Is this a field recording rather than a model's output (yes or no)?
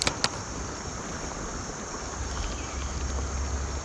yes